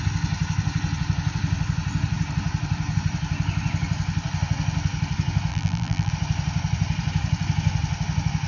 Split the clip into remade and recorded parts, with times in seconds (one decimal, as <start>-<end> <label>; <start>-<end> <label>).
0.0-5.5 recorded; 5.5-6.1 remade; 6.1-8.5 recorded